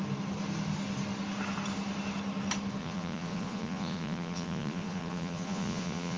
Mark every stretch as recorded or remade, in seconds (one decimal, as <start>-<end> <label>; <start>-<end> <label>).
0.0-2.8 recorded; 2.8-6.2 remade